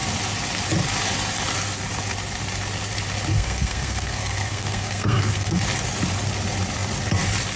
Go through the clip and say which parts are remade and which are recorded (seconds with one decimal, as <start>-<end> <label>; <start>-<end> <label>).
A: 0.0-3.3 recorded; 3.3-5.6 remade; 5.6-7.6 recorded